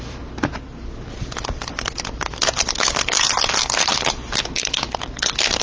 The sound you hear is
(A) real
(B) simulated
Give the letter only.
A